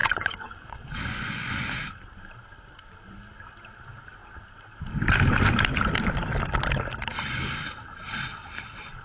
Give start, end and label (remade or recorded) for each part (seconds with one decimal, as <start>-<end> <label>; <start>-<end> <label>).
0.0-1.5 remade; 1.5-9.0 recorded